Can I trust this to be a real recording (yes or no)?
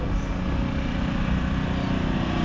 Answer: yes